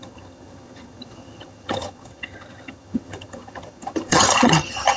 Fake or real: fake